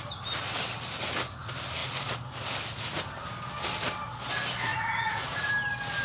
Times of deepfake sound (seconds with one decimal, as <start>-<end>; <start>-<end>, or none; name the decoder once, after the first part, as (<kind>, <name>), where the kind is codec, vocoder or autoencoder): 4.7-5.5 (vocoder, Vocos)